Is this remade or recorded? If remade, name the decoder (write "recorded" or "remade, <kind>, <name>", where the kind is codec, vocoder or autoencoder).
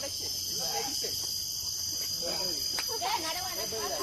recorded